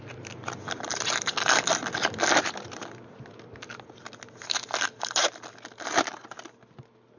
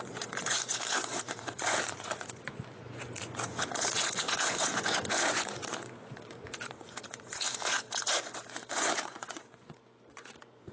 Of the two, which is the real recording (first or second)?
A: first